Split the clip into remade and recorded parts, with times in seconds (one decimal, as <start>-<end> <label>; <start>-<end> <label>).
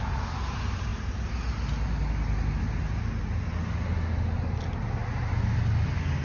0.0-6.2 recorded